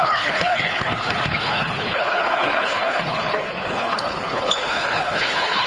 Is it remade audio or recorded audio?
remade